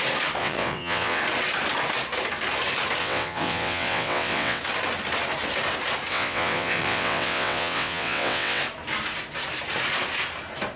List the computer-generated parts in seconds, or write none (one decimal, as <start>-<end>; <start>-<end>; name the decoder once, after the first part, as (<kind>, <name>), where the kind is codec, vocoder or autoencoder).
0.4-1.2 (vocoder, WaveNeXt); 3.0-4.6; 6.1-8.6